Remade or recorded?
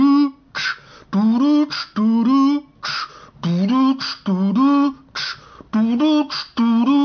recorded